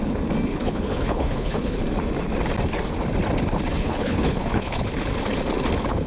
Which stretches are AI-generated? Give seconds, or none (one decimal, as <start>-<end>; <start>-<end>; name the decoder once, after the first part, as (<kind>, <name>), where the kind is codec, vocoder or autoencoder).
0.5-1.8 (codec, HILCodec); 3.8-4.8

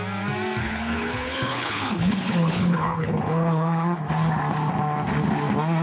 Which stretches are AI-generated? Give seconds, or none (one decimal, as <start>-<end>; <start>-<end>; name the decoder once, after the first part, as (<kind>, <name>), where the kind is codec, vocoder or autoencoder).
0.6-4.1 (codec, HILCodec)

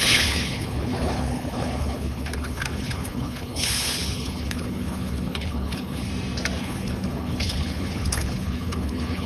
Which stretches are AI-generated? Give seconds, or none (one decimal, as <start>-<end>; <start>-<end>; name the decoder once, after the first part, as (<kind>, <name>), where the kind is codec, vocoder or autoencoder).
0.0-6.1 (codec, HILCodec); 6.6-9.3

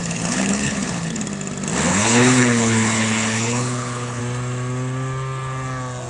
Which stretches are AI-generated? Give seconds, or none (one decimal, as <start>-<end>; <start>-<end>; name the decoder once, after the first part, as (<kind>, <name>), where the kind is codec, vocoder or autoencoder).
0.0-1.2 (codec, HILCodec); 1.9-4.2

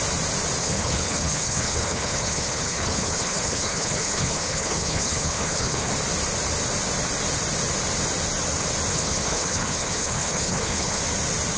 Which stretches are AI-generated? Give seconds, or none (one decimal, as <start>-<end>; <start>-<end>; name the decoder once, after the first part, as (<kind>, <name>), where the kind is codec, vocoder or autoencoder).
0.6-5.9 (codec, HILCodec); 8.9-11.0